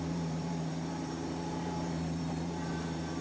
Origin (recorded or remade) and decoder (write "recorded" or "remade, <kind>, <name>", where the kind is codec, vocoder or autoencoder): remade, vocoder, BigVGAN v2